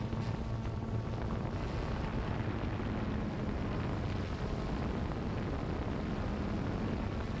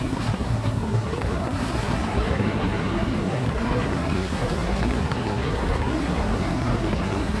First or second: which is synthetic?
second